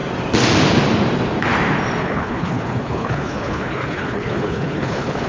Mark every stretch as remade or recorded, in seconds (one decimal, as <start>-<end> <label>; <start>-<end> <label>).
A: 0.0-2.0 recorded; 2.0-5.3 remade

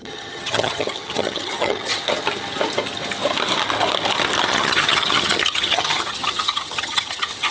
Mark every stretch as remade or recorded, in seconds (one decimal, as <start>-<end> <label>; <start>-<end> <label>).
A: 0.0-2.0 remade; 2.0-4.5 recorded; 4.5-7.5 remade